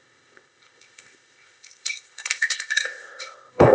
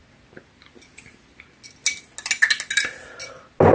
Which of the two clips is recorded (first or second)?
second